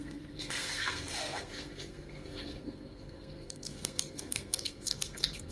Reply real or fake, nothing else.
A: fake